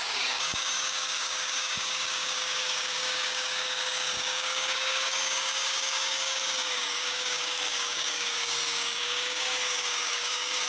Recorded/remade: remade